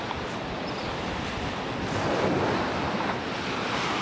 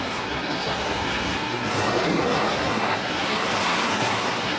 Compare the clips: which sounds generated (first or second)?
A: second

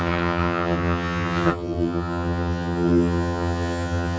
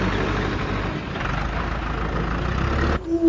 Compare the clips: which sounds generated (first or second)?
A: first